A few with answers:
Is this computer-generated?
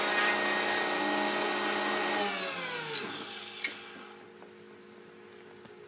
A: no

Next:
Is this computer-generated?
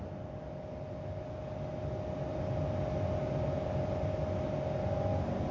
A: no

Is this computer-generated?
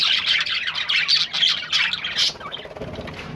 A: no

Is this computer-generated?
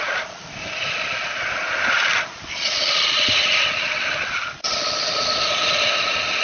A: no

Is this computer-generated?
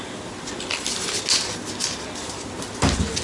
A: no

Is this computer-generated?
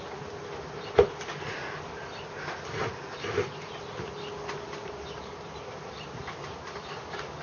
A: no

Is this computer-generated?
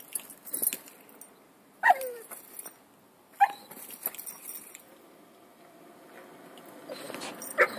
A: no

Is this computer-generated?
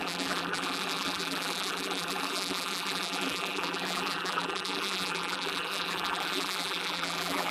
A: yes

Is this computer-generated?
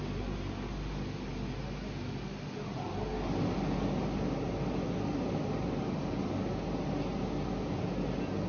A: no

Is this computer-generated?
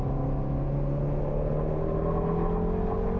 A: no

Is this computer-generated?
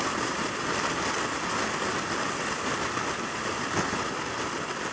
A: no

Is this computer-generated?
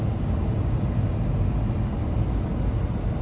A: no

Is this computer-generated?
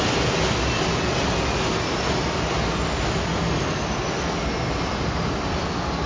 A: no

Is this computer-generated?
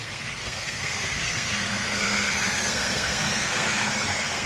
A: yes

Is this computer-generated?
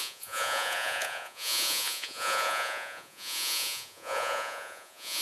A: yes